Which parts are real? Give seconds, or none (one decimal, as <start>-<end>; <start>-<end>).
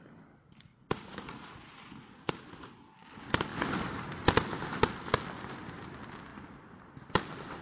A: 0.0-0.7; 2.5-7.6